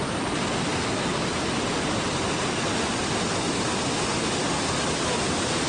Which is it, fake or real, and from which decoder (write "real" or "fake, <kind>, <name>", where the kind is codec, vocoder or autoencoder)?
real